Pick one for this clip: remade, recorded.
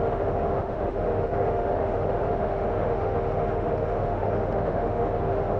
remade